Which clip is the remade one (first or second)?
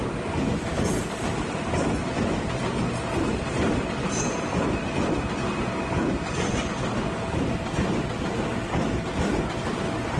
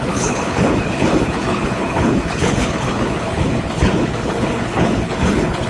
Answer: second